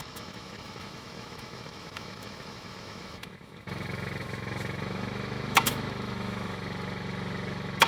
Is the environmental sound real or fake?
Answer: fake